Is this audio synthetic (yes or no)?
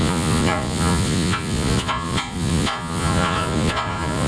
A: yes